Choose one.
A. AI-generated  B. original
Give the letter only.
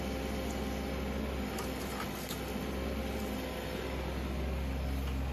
B